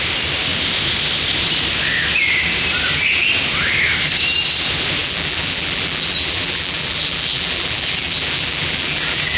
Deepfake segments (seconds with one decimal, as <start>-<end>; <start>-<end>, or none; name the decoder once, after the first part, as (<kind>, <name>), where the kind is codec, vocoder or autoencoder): 5.0-9.4 (vocoder, BigVGAN v2)